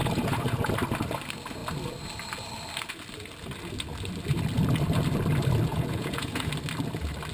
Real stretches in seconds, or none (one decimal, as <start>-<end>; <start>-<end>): 0.7-5.7; 6.5-7.3